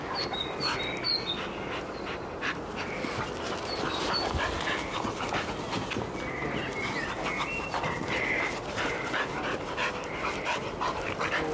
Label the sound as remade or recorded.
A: recorded